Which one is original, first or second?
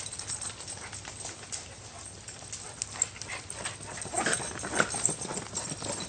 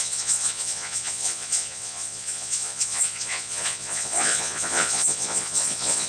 first